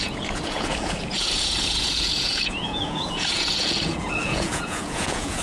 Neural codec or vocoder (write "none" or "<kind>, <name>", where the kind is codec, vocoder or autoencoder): vocoder, Vocos